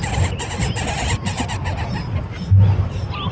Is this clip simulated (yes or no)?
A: no